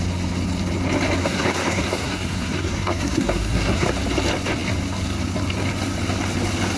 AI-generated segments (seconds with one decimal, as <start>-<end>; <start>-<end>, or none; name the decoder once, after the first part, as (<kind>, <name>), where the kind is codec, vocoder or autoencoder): 1.2-3.9 (codec, SNAC)